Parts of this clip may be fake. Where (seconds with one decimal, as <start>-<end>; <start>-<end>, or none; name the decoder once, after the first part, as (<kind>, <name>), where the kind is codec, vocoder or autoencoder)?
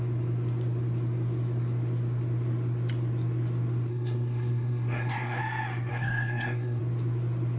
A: 3.9-5.4 (codec, SNAC); 5.9-6.8